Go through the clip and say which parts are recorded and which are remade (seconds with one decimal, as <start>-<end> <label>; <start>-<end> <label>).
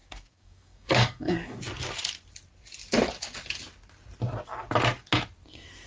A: 0.0-1.6 remade; 1.6-5.9 recorded